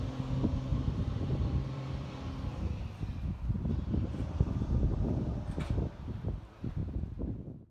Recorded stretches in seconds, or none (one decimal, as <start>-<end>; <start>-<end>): 0.0-0.7; 2.1-2.5; 5.4-7.7